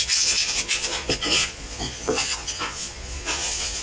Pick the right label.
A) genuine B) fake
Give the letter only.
B